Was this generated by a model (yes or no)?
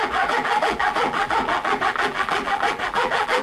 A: yes